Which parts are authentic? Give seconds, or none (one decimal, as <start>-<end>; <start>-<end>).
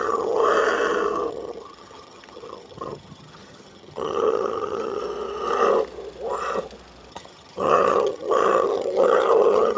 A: 0.4-1.3; 5.0-7.1